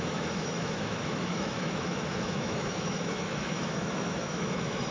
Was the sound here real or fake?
fake